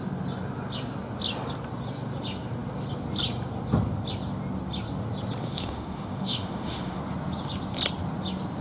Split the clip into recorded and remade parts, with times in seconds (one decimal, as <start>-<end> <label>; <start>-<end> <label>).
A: 0.0-5.4 recorded; 5.4-7.0 remade; 7.0-8.6 recorded